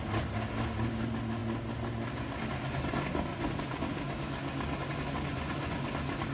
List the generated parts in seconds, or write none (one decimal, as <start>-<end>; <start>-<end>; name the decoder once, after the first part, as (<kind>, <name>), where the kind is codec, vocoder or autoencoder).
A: 3.3-3.9 (vocoder, Vocos); 5.3-5.8